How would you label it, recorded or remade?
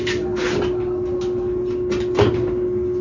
recorded